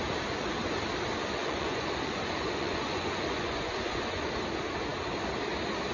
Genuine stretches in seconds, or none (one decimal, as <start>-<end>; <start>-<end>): 0.0-1.4; 4.3-5.9